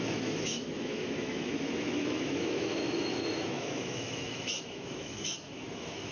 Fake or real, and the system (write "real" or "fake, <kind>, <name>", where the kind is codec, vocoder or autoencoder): fake, autoencoder, DAC-VAE